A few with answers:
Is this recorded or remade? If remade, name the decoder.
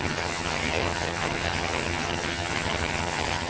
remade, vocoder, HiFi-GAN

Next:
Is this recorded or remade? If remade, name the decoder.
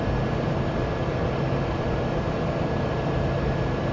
remade, vocoder, BigVGAN v2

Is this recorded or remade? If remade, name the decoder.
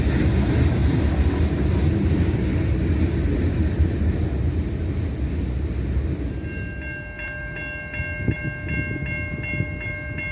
recorded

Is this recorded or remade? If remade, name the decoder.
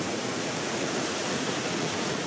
remade, vocoder, Vocos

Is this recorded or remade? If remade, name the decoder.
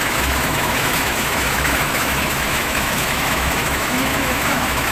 remade, autoencoder, DAC-VAE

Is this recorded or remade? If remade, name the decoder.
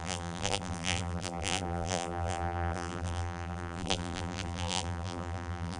remade, vocoder, BigVGAN v2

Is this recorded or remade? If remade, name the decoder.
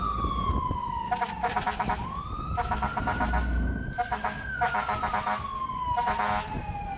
recorded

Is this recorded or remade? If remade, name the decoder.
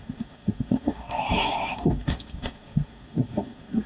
remade, codec, SNAC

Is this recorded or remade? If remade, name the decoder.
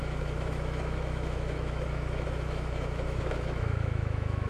remade, autoencoder, DAC-VAE